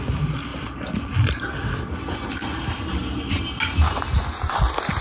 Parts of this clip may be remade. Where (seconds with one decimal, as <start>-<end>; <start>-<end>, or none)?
none